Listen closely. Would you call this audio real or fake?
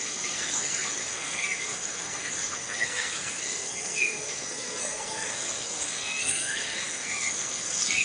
fake